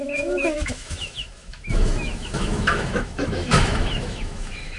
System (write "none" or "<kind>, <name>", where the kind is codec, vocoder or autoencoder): autoencoder, DAC-VAE